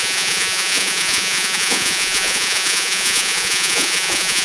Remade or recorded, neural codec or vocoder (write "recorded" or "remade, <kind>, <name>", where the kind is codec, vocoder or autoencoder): remade, vocoder, Vocos